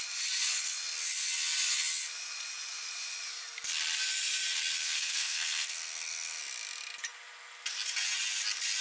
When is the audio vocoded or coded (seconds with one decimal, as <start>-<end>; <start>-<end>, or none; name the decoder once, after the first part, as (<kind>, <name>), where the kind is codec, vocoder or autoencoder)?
4.8-6.4 (codec, SNAC)